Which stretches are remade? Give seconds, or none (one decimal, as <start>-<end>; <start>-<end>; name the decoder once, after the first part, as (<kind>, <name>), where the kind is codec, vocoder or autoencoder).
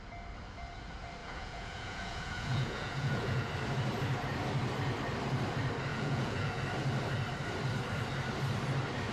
1.2-3.5 (vocoder, Vocos); 5.9-6.6